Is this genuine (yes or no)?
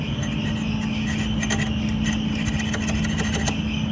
yes